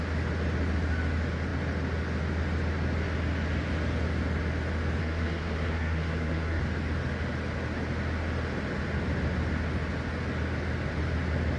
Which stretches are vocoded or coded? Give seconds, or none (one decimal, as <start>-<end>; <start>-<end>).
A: 5.0-6.6